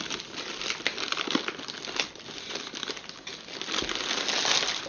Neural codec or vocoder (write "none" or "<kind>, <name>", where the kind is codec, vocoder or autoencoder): none